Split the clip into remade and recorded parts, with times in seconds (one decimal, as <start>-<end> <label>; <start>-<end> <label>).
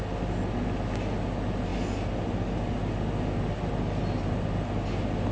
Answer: 0.0-5.3 recorded